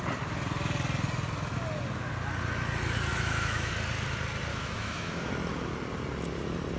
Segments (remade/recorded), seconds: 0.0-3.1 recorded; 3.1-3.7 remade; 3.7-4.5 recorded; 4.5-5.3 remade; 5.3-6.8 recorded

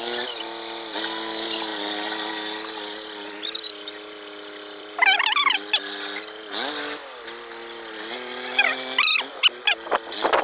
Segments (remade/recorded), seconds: 0.0-10.4 recorded

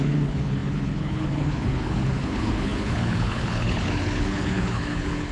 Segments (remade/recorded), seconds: 0.0-5.3 remade